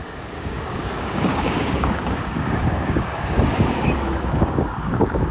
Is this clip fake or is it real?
fake